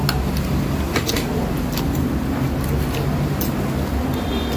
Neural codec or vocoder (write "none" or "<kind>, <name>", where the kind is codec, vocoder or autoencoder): none